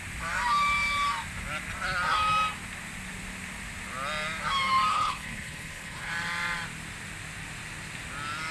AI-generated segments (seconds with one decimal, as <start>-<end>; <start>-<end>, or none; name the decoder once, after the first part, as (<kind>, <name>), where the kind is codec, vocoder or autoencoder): 4.9-6.1 (codec, HILCodec)